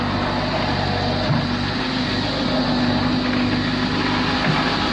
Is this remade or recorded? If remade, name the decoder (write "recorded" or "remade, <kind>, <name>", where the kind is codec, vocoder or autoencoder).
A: recorded